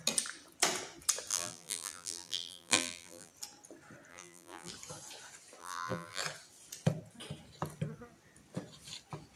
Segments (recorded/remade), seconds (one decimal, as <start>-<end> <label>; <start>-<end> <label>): 0.0-1.3 recorded; 1.3-3.3 remade; 3.3-4.1 recorded; 4.1-4.7 remade; 4.7-5.6 recorded; 5.6-6.2 remade; 6.2-9.4 recorded